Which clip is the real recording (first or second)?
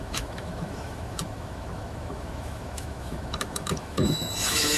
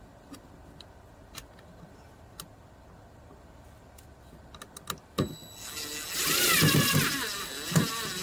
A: second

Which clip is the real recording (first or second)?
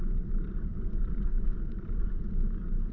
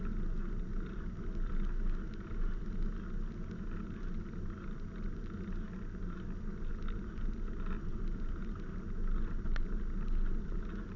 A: second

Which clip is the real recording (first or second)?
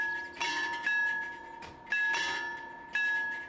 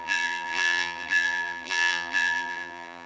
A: first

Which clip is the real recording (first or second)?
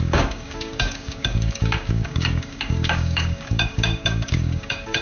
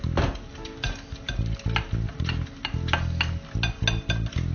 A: second